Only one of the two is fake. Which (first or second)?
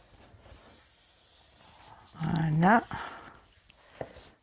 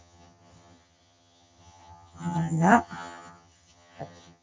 second